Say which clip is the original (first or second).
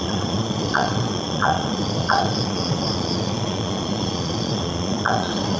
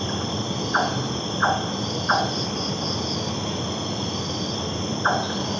second